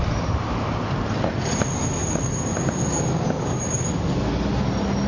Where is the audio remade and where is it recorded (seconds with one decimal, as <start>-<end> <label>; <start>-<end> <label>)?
0.0-5.1 recorded